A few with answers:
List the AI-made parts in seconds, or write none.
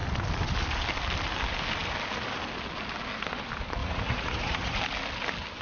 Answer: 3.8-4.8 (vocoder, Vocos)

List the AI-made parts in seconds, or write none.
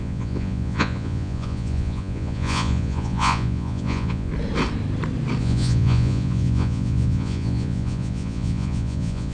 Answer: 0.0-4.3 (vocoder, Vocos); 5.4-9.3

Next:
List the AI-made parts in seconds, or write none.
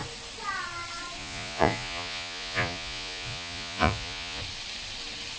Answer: 1.2-4.4 (vocoder, Vocos)